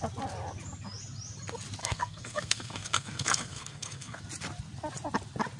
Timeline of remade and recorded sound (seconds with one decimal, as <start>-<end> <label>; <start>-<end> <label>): 0.0-1.8 recorded; 1.8-4.2 remade; 4.2-5.6 recorded